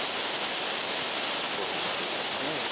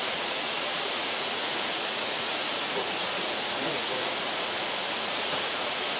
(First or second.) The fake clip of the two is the second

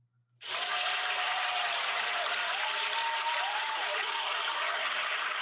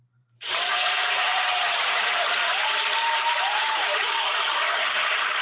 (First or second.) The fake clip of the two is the second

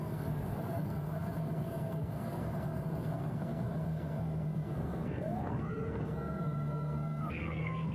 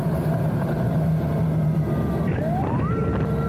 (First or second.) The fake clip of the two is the first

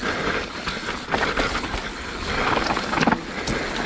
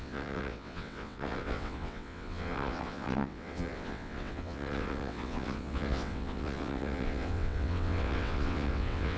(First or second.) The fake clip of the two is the second